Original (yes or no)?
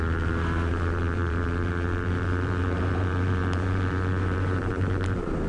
no